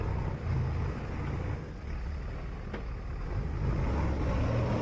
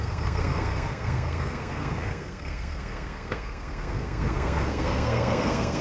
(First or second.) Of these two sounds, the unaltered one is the first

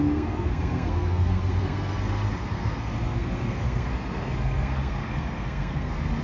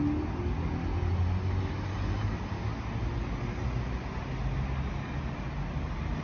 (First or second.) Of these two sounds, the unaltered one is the second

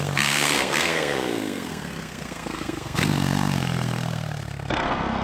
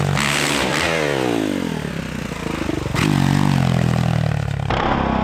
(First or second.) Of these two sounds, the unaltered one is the second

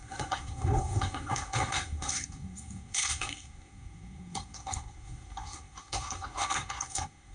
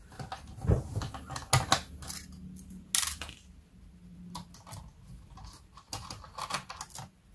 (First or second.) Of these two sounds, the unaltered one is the second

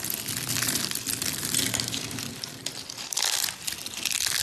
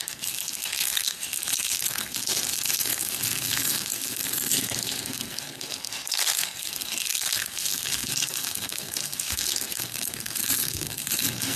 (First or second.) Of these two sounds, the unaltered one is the first